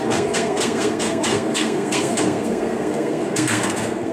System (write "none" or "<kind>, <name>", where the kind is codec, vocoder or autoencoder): codec, SNAC